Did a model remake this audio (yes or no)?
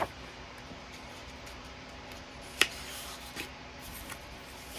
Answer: yes